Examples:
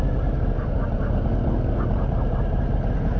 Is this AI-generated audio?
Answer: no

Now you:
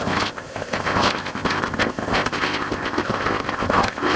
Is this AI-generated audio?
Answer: yes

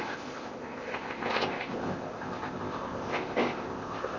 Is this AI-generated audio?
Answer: yes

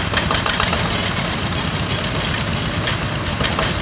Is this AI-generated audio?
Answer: no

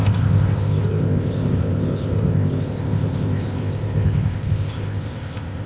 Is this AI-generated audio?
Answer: yes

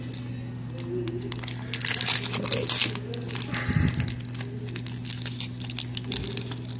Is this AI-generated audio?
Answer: no